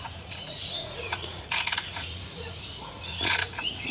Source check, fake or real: fake